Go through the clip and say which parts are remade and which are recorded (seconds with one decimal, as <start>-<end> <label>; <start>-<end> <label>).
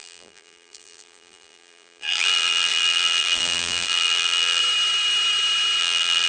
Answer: 0.0-4.6 remade; 4.6-5.8 recorded; 5.8-6.3 remade